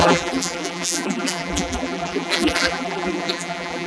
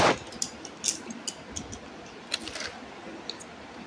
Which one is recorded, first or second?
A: second